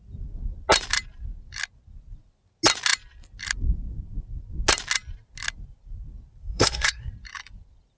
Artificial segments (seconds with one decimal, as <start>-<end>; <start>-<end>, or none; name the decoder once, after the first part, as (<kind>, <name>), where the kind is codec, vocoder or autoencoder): 6.4-7.1 (codec, SNAC)